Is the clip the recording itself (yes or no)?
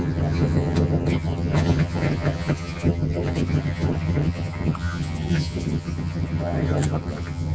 no